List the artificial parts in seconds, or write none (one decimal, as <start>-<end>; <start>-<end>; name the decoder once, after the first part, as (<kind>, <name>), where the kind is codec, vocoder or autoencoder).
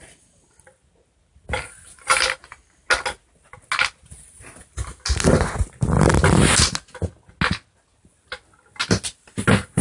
none